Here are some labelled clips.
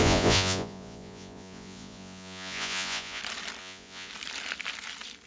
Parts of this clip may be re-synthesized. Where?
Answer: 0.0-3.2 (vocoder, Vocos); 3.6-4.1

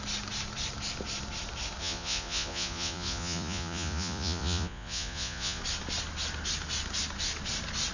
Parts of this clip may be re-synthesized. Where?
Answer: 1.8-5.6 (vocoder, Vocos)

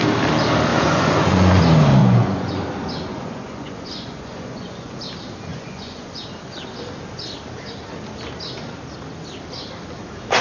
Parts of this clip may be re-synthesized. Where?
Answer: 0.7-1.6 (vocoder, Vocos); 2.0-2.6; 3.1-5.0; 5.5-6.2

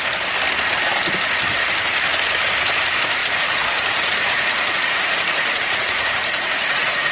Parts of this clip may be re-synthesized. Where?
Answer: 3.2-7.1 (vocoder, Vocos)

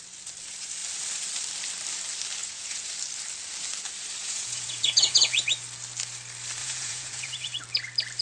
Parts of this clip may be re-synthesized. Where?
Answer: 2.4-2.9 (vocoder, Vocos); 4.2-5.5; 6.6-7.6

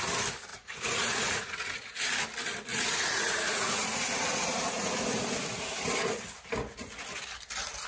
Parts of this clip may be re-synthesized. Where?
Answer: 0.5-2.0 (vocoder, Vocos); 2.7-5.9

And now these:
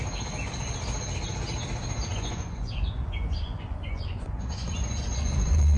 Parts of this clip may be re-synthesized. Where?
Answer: 2.1-5.8 (vocoder, Vocos)